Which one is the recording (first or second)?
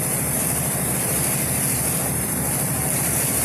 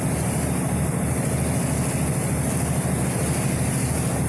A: second